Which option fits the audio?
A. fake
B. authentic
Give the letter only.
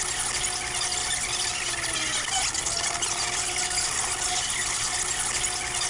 B